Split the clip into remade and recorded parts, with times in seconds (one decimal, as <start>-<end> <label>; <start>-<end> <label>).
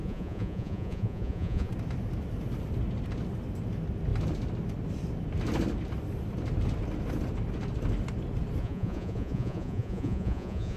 0.0-1.7 remade; 1.7-8.6 recorded; 8.6-10.8 remade